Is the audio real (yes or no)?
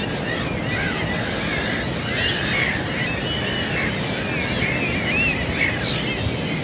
yes